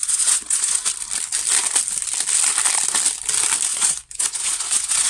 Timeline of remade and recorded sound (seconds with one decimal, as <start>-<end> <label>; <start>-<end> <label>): 0.0-0.8 remade; 0.8-3.7 recorded; 3.7-5.1 remade